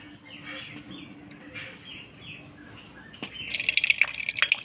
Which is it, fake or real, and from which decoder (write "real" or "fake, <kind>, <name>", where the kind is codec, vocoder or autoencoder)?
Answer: real